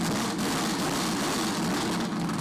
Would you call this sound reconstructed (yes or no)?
no